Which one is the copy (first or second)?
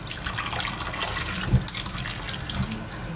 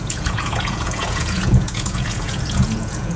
second